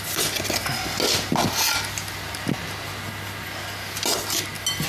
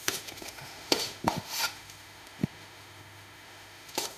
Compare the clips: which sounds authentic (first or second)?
first